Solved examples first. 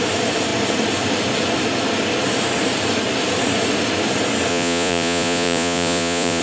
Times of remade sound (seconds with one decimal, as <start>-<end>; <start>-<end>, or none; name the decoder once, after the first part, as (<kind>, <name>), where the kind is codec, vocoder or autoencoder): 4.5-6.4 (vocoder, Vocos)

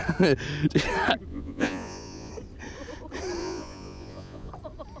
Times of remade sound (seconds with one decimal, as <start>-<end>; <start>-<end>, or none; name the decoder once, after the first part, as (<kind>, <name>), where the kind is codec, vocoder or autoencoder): 1.3-2.3 (vocoder, Vocos); 3.4-4.5

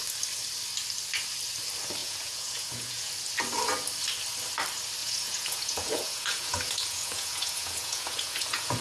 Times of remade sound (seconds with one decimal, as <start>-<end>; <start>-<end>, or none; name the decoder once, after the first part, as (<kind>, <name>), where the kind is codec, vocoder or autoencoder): 2.0-3.1 (vocoder, Vocos); 5.0-8.8

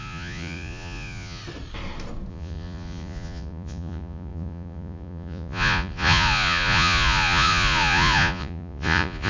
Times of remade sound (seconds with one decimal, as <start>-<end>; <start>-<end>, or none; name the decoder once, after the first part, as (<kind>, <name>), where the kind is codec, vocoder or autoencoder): 0.0-1.4 (vocoder, Vocos); 2.3-9.3